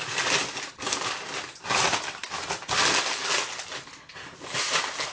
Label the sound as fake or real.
real